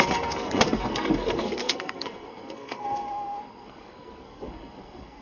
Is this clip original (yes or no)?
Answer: no